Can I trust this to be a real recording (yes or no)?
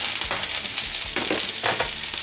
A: yes